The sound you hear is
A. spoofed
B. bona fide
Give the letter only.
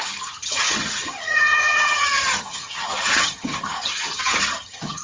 A